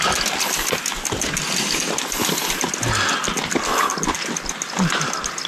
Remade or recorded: recorded